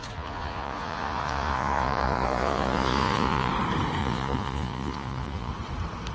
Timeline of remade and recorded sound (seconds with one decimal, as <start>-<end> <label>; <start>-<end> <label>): 0.0-3.5 remade; 3.5-4.0 recorded; 4.0-5.5 remade; 5.5-6.1 recorded